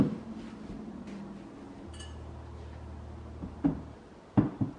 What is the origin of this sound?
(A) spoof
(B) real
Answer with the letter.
B